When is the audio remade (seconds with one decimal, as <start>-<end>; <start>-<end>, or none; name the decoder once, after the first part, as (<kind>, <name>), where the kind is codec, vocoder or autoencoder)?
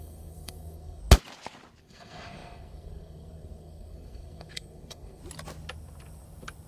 0.0-1.0 (codec, SNAC); 1.8-5.2